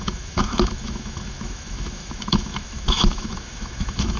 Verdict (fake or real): fake